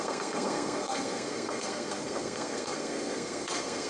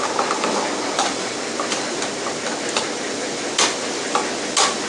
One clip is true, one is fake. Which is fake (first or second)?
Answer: first